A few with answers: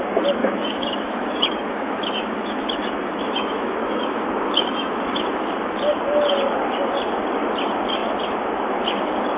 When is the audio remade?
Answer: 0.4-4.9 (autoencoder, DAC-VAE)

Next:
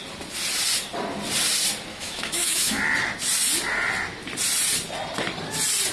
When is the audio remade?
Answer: 1.9-2.8 (autoencoder, DAC-VAE)